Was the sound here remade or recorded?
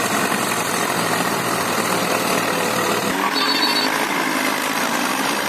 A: remade